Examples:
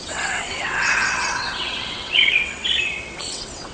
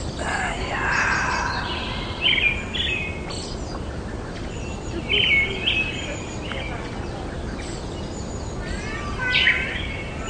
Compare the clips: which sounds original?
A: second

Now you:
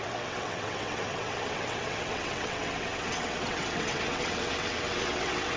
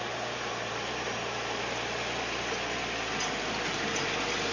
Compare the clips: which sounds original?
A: second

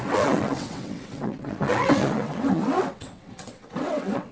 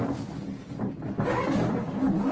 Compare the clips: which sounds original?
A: second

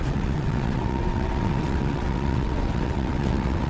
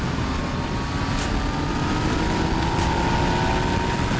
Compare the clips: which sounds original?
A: second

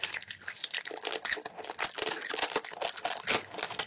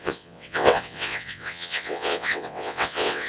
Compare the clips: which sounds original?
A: first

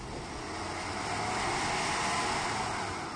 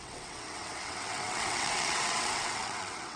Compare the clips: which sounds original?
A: first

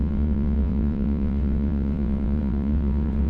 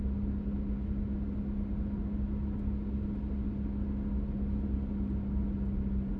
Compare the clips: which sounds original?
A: second